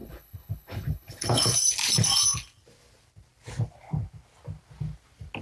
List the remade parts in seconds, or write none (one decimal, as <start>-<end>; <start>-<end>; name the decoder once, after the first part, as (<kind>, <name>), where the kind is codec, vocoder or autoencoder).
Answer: 0.0-1.7 (codec, HILCodec)